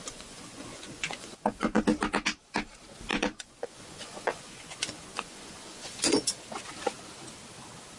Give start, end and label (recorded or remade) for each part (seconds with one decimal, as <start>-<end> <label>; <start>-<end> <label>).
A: 0.0-1.8 remade; 1.8-3.1 recorded; 3.1-6.4 remade; 6.4-8.0 recorded